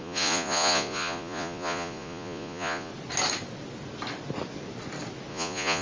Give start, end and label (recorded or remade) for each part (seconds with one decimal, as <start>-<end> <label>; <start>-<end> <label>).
0.0-2.9 remade; 2.9-5.3 recorded; 5.3-5.8 remade